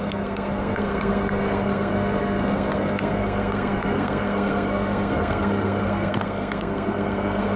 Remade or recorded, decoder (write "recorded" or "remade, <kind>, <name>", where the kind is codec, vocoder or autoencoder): remade, codec, SNAC